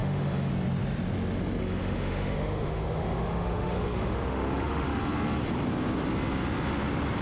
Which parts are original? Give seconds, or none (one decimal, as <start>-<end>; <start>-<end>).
0.5-1.6; 5.0-7.2